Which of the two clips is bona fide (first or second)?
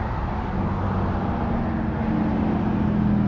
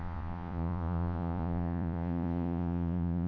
first